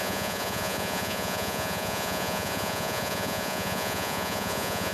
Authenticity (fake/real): fake